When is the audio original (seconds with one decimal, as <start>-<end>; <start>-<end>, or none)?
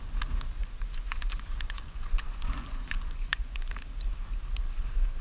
0.0-0.6; 3.7-5.2